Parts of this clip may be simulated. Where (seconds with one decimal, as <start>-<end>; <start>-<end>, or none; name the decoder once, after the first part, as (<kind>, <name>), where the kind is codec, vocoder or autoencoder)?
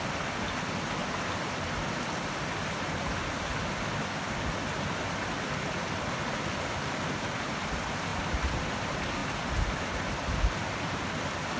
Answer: 8.1-8.6 (vocoder, BigVGAN v2)